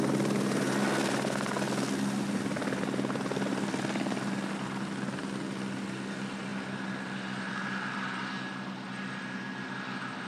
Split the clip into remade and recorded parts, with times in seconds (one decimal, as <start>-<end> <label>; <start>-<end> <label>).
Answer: 0.0-10.3 recorded